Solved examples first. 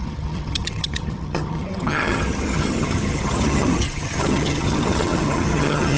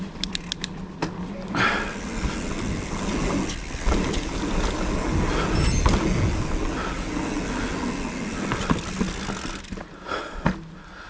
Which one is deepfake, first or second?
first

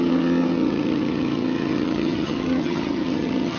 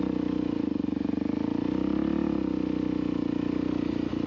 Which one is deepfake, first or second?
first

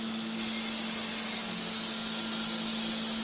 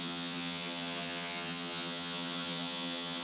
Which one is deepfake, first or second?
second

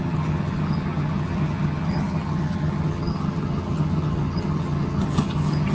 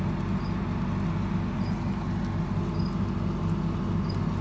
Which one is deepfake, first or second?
first